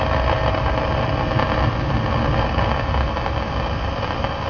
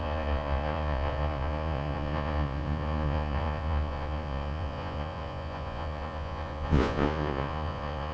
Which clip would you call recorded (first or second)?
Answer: first